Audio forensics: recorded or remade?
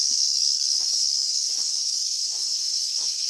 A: remade